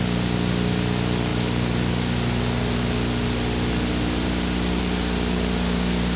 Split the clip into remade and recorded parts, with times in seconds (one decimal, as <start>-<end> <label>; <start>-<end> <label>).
0.0-6.2 recorded